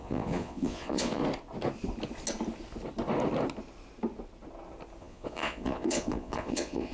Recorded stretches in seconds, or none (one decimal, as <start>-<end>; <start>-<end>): 1.2-5.0